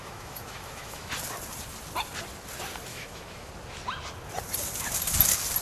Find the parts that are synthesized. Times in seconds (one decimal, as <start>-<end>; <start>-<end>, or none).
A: 0.0-1.1; 2.9-3.5

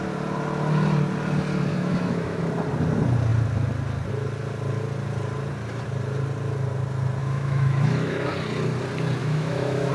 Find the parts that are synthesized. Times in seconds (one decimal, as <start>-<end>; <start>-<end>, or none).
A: 1.7-2.4; 7.2-8.3; 9.2-9.9

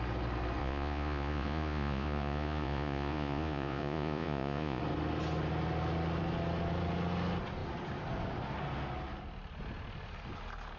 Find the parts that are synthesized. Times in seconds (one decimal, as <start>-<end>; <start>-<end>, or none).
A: 0.6-4.8

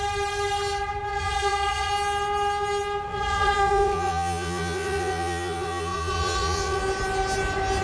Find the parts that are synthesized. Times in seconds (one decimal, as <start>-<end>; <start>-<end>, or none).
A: 1.1-1.9; 3.1-6.8

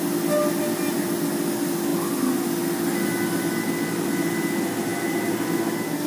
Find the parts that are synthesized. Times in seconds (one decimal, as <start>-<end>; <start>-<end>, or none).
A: 4.9-6.1

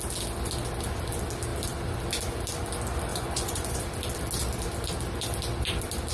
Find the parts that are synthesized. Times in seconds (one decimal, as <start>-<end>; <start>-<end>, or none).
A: 3.1-3.8